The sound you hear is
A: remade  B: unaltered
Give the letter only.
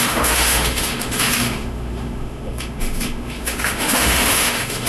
A